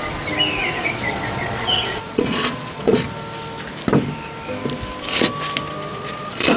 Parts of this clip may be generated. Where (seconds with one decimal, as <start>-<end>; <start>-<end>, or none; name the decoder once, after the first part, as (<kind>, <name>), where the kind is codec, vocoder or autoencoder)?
0.6-3.0 (vocoder, Vocos); 5.9-6.6